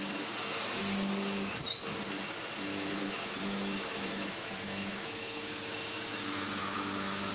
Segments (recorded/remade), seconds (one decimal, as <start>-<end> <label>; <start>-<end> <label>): 0.0-2.7 recorded; 2.7-6.0 remade; 6.0-6.6 recorded; 6.6-7.3 remade